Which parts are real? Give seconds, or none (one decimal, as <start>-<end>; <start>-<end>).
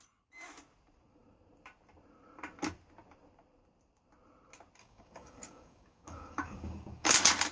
0.0-4.8; 7.1-7.5